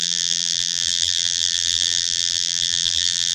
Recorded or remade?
remade